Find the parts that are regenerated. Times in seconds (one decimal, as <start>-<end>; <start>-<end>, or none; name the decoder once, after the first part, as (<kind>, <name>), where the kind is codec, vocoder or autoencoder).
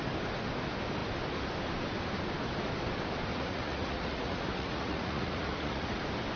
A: 3.3-6.0 (vocoder, Vocos)